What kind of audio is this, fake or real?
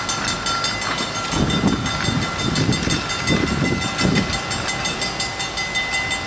real